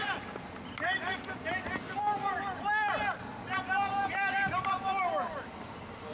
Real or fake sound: real